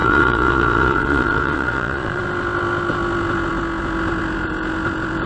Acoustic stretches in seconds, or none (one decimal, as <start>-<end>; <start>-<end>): 2.2-5.3